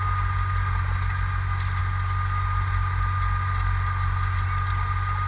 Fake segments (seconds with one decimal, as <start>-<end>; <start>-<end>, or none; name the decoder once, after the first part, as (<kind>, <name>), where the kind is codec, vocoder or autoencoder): none